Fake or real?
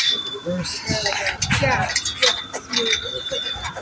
real